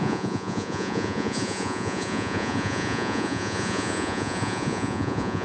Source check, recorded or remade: remade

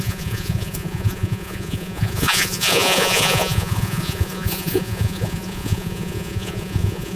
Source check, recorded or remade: remade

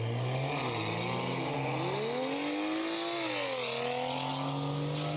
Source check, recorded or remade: recorded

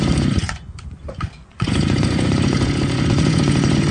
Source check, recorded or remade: remade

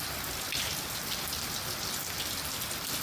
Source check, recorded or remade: recorded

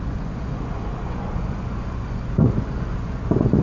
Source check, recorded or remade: remade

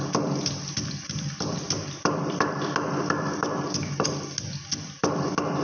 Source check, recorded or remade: recorded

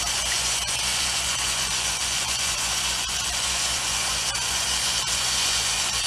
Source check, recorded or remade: remade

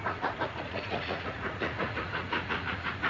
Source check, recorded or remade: remade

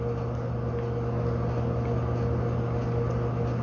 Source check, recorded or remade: recorded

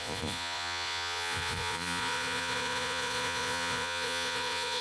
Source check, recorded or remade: remade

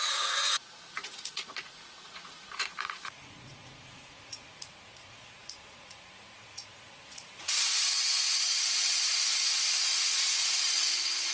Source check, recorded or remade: remade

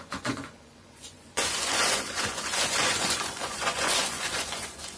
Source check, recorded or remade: remade